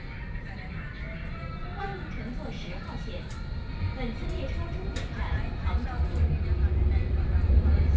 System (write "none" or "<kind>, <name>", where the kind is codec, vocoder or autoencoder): none